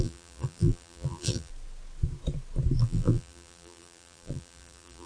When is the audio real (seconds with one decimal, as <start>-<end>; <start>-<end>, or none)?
1.5-2.8